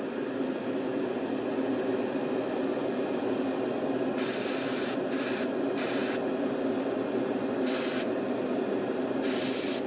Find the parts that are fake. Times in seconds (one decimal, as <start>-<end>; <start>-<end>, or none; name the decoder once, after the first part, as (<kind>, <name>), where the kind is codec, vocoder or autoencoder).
none